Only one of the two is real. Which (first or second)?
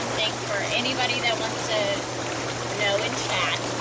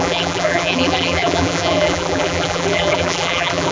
first